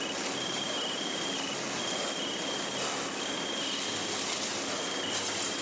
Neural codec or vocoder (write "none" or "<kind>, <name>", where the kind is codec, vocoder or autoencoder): none